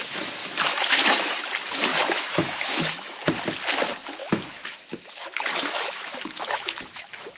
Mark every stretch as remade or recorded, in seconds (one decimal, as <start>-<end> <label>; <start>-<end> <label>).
0.0-0.4 recorded; 0.4-1.4 remade; 1.4-1.9 recorded; 1.9-3.1 remade; 3.1-4.2 recorded; 4.2-7.4 remade